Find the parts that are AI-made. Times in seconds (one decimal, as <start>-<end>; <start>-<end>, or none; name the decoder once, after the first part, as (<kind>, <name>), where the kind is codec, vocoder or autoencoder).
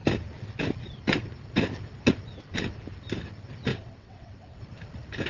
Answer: 3.7-4.6 (vocoder, WaveNeXt)